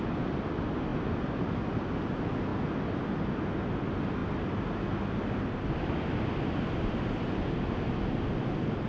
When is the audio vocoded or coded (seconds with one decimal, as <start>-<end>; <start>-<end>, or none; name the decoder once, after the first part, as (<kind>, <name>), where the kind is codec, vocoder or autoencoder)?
none